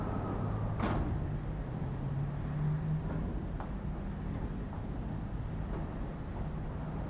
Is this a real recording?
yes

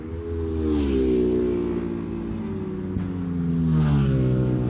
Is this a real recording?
yes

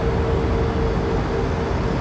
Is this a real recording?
yes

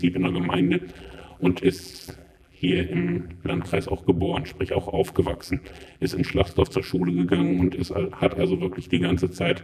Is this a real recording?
no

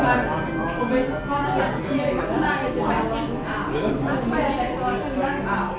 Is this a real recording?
yes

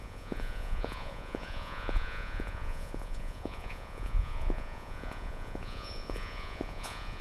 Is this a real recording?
no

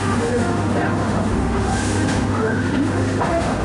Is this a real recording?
no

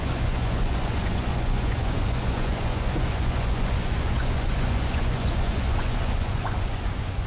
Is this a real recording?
no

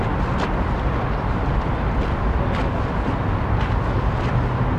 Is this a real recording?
yes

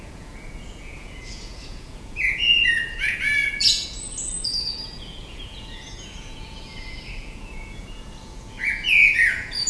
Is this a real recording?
no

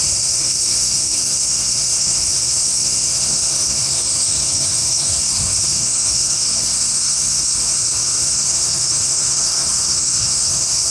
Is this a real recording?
no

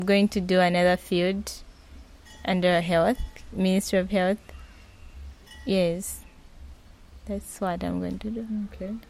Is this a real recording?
yes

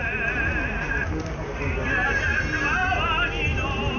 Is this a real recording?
yes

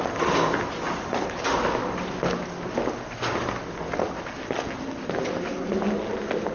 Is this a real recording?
yes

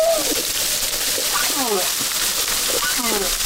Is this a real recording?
yes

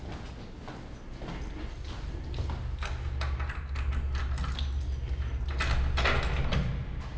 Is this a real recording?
yes